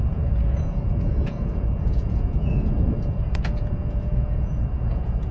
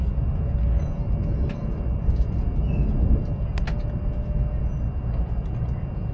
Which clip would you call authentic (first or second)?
second